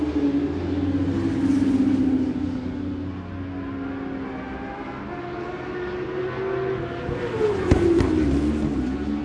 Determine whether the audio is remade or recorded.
recorded